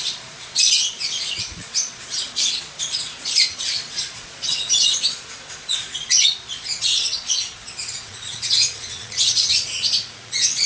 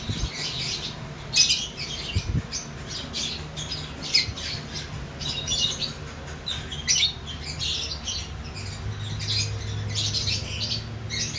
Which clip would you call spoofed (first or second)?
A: first